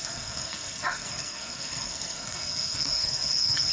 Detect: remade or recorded remade